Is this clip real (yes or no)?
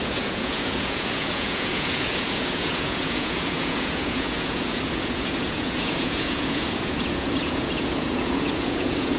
no